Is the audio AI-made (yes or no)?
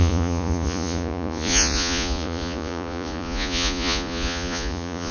yes